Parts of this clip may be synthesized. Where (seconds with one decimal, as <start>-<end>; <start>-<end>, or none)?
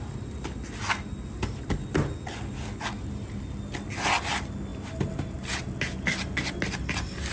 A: none